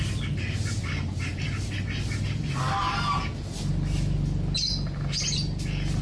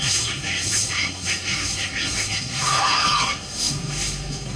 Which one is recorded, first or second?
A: first